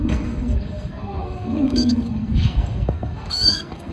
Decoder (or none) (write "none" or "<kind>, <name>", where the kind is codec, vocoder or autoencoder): codec, SNAC